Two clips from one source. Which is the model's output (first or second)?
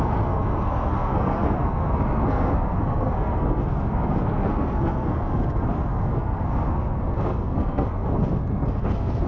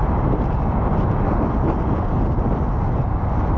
first